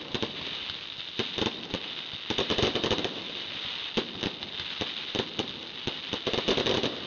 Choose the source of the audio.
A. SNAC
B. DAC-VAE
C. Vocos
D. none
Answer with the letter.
D